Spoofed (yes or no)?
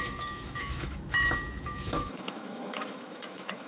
yes